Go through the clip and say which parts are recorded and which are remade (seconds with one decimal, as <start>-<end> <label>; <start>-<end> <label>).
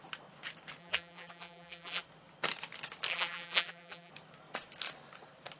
0.0-0.8 recorded; 0.8-2.0 remade; 2.0-3.1 recorded; 3.1-4.1 remade; 4.1-5.6 recorded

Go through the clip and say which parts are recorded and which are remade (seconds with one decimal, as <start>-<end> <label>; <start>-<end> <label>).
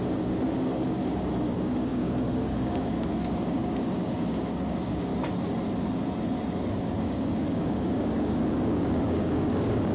0.0-5.1 remade; 5.1-6.7 recorded; 6.7-9.9 remade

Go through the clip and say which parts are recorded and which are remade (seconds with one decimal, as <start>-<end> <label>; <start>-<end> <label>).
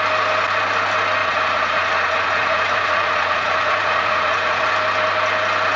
0.0-1.2 recorded; 1.2-4.7 remade; 4.7-5.8 recorded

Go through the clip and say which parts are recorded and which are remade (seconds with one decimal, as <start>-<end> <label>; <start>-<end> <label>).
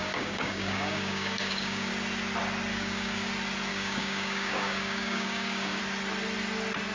0.0-1.9 remade; 1.9-2.7 recorded; 2.7-3.3 remade; 3.3-3.7 recorded; 3.7-5.8 remade; 5.8-6.9 recorded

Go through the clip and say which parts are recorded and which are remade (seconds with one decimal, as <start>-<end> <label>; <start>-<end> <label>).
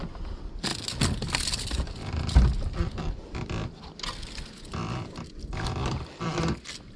0.0-7.0 recorded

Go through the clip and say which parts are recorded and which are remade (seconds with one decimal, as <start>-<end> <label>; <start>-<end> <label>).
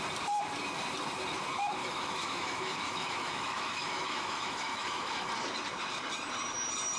0.0-1.8 recorded; 1.8-5.3 remade; 5.3-7.0 recorded